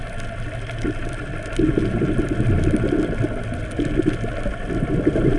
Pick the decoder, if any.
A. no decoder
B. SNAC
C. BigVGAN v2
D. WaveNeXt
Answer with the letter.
A